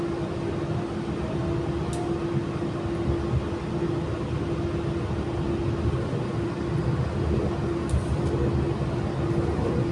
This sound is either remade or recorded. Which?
recorded